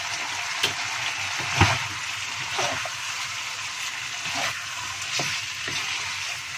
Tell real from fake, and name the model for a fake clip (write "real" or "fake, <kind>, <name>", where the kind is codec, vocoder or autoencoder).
real